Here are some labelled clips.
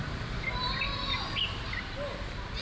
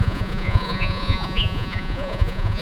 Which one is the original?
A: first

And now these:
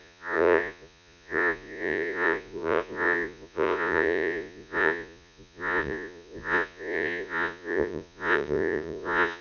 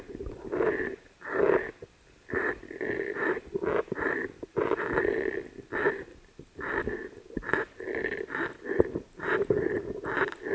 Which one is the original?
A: second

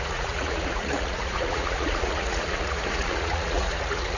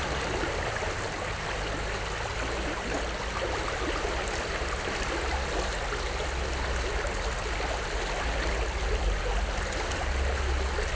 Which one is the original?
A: second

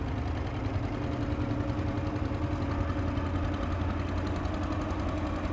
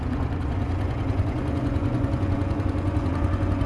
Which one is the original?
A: first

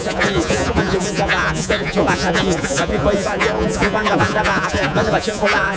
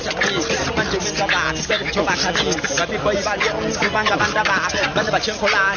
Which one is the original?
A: second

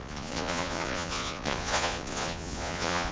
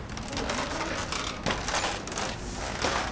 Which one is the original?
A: second